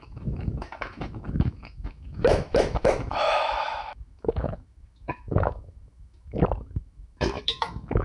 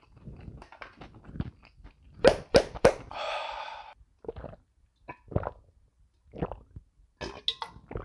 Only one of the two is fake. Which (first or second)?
first